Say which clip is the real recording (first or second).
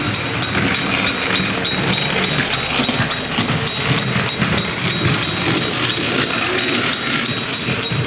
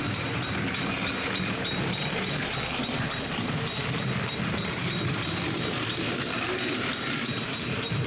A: first